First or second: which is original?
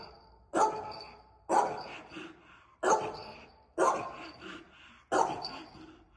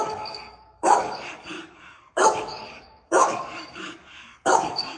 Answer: first